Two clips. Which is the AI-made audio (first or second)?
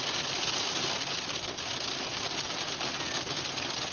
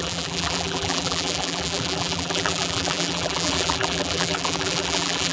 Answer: second